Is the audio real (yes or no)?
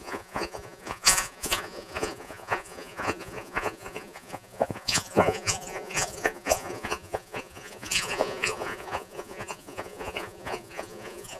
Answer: no